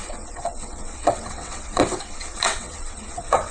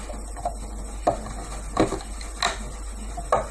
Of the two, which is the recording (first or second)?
second